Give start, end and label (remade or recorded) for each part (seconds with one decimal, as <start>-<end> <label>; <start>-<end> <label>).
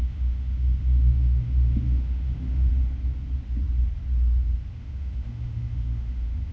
0.0-2.7 remade; 2.7-4.7 recorded; 4.7-6.5 remade